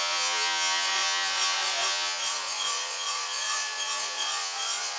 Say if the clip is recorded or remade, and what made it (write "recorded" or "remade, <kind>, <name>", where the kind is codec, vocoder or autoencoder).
remade, vocoder, Vocos